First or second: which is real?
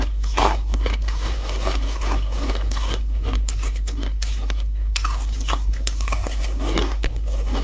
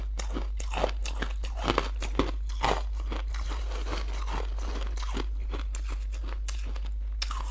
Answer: second